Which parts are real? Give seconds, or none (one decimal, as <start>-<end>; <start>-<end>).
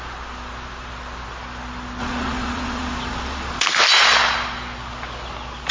0.0-2.0; 3.6-5.7